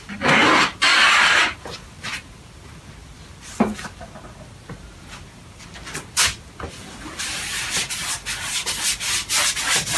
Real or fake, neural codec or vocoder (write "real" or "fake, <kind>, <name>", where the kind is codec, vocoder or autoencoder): real